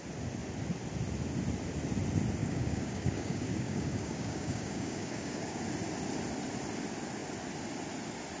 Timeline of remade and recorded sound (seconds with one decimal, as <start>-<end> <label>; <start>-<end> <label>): 0.0-2.4 recorded; 2.4-5.6 remade; 5.6-8.4 recorded